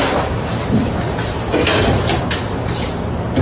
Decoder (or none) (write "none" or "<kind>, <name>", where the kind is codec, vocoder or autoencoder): none